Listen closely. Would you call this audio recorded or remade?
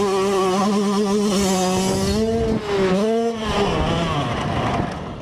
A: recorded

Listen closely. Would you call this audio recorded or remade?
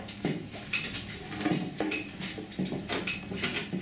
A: recorded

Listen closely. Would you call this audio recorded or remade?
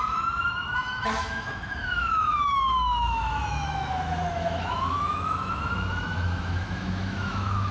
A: remade